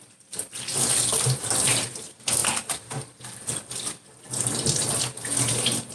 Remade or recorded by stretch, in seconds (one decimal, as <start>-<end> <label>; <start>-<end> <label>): 0.0-1.1 recorded; 1.1-1.9 remade; 1.9-5.9 recorded

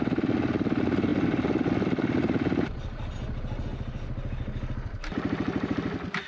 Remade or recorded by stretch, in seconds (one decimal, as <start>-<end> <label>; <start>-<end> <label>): 0.0-6.3 recorded

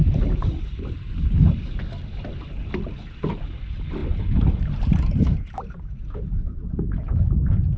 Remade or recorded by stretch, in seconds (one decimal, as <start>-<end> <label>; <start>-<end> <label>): 0.0-1.8 remade; 1.8-4.0 recorded; 4.0-6.6 remade; 6.6-7.8 recorded

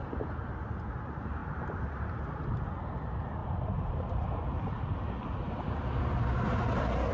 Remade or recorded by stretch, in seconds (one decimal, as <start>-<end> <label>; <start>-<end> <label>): 0.0-1.4 recorded; 1.4-2.4 remade; 2.4-3.4 recorded; 3.4-4.3 remade; 4.3-7.1 recorded

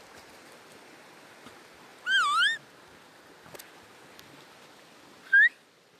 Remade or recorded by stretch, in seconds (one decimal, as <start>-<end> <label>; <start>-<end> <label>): 0.0-6.0 recorded

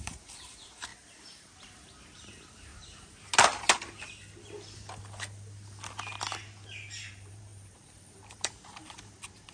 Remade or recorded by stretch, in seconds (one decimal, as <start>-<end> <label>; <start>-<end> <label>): 0.0-2.7 remade; 2.7-7.1 recorded; 7.1-9.5 remade

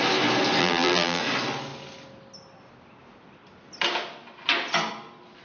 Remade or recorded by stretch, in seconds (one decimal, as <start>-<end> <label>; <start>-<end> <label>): 0.0-0.6 recorded; 0.6-1.2 remade; 1.2-5.4 recorded

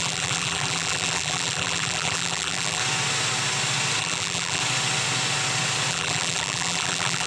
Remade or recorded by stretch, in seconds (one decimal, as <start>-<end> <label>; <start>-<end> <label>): 0.0-2.8 remade; 2.8-4.0 recorded; 4.0-4.6 remade; 4.6-5.9 recorded; 5.9-7.3 remade